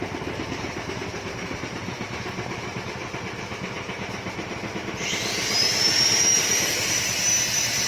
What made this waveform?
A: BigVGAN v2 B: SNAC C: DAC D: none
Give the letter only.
A